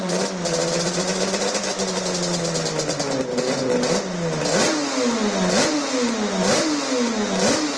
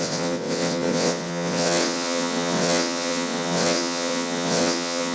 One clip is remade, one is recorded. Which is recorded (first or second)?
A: first